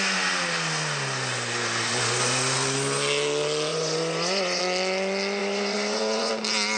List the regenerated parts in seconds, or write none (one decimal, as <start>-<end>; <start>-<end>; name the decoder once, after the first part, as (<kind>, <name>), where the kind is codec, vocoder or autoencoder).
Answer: 3.7-4.6 (vocoder, Vocos); 5.4-6.3